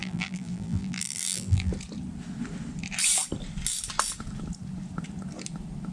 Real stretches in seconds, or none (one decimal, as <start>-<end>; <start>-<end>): 1.7-5.9